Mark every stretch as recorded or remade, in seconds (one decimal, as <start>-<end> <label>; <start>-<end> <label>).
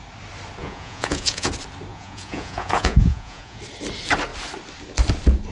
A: 0.0-0.6 recorded; 0.6-1.5 remade; 1.5-1.9 recorded; 1.9-3.6 remade; 3.6-5.5 recorded